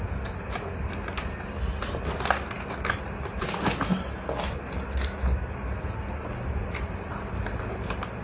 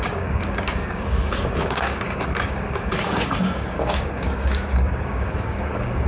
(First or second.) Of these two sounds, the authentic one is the first